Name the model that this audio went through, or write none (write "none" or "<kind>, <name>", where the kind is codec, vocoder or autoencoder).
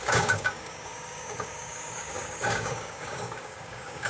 codec, DAC